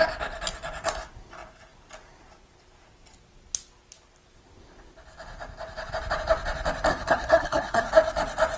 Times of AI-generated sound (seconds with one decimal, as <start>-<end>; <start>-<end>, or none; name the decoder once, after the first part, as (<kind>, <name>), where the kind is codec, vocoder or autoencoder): 6.9-7.9 (codec, SNAC)